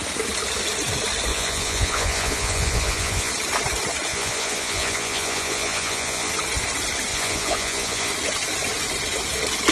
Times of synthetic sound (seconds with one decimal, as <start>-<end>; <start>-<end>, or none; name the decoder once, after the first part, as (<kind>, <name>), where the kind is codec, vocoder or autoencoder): 1.3-3.3 (vocoder, Vocos); 4.1-6.3; 7.1-8.1